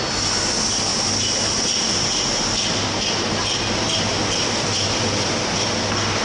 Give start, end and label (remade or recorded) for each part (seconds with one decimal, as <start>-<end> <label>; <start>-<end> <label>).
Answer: 0.0-0.9 recorded; 0.9-2.1 remade; 2.1-6.2 recorded